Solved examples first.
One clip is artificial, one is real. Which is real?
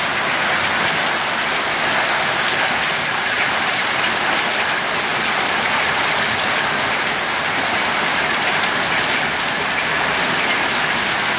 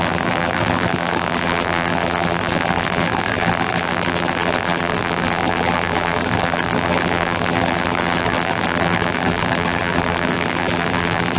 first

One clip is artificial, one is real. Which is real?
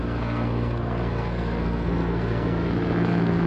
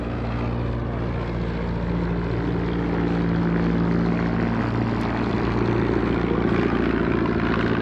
second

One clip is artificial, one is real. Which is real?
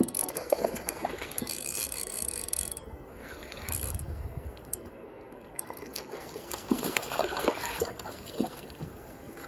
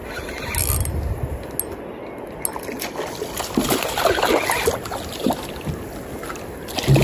second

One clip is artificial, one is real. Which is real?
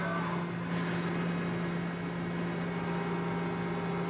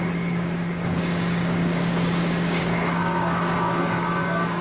first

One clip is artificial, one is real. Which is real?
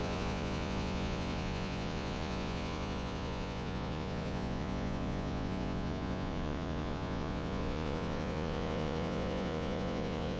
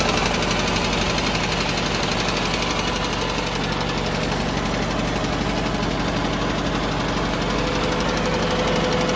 second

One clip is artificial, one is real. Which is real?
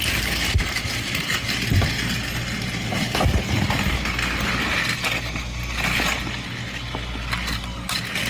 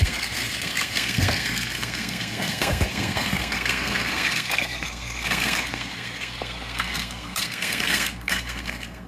first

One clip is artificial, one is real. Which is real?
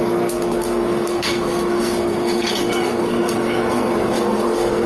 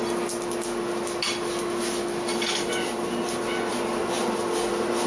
second